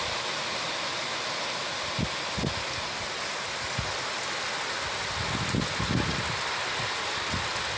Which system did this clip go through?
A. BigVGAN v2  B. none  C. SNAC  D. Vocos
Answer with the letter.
B